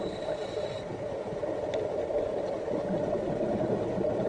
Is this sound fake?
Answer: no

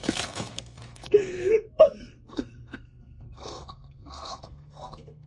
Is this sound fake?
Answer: yes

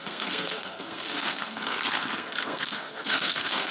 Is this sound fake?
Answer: yes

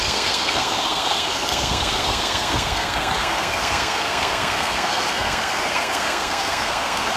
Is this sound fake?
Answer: yes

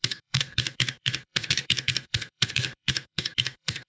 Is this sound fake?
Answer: yes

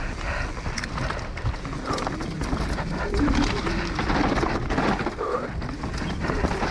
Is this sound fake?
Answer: no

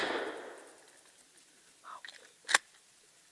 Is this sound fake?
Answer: no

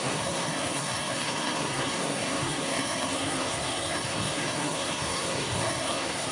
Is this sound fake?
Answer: yes